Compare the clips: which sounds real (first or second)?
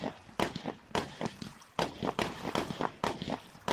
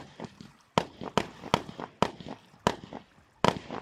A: second